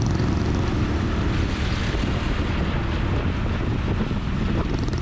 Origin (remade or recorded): recorded